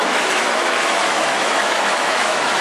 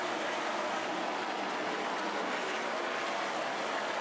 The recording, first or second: second